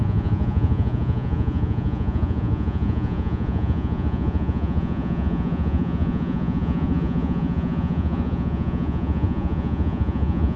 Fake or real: fake